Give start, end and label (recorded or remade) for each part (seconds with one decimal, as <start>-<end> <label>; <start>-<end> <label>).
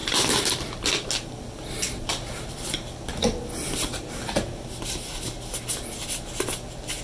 0.0-7.0 recorded